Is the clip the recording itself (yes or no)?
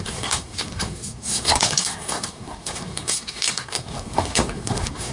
no